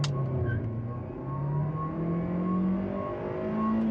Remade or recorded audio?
recorded